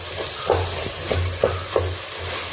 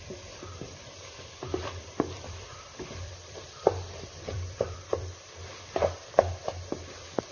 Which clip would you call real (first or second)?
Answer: first